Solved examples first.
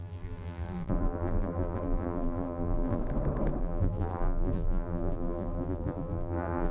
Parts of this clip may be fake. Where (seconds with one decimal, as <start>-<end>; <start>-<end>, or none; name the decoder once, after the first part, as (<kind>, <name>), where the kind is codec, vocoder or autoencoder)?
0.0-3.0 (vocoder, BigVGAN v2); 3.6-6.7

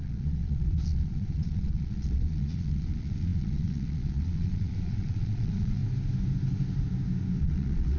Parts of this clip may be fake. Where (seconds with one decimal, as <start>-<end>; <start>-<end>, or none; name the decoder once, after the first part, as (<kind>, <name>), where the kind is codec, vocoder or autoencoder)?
0.0-5.8 (vocoder, Vocos); 7.4-8.0

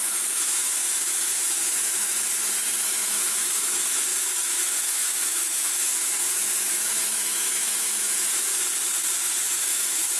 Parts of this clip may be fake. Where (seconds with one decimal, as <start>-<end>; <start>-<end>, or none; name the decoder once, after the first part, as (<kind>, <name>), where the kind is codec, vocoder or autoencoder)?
0.0-2.1 (autoencoder, DAC-VAE); 2.8-8.5; 9.4-10.2

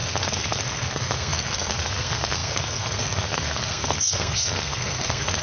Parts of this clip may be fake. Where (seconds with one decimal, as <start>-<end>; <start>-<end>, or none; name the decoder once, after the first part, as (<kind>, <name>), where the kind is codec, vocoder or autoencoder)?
0.0-5.4 (codec, SNAC)

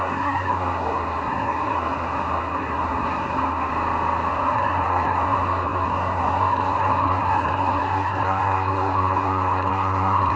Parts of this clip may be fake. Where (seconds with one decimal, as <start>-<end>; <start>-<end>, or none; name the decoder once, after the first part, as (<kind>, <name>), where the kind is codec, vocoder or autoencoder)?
0.0-3.7 (codec, SNAC); 4.3-10.4

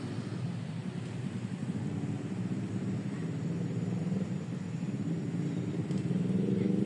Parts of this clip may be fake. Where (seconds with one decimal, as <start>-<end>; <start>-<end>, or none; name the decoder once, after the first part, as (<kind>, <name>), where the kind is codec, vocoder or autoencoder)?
none